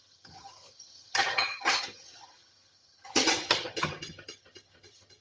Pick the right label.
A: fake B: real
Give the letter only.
A